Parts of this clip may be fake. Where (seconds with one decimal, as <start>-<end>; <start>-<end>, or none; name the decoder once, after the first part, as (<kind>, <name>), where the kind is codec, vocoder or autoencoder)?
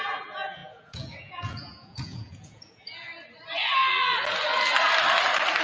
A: 0.0-3.1 (vocoder, Vocos)